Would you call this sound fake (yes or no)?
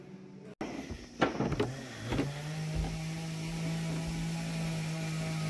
no